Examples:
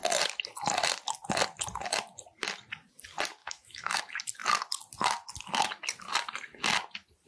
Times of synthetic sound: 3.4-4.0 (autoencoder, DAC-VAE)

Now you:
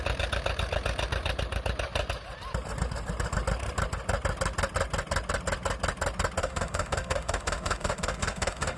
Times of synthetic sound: 6.4-8.8 (autoencoder, DAC-VAE)

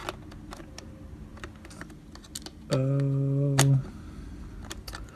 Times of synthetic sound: none

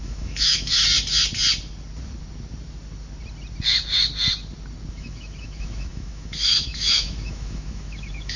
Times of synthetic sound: 0.0-0.8 (autoencoder, DAC-VAE); 4.9-8.4

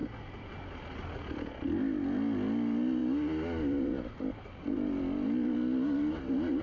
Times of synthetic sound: none

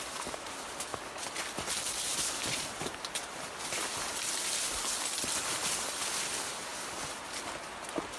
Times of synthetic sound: none

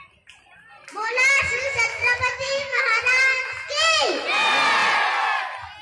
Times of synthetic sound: 1.9-2.8 (autoencoder, DAC-VAE)